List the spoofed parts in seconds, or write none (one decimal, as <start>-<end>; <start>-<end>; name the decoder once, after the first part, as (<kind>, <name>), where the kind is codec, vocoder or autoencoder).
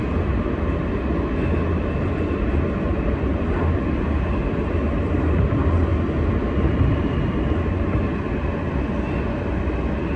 none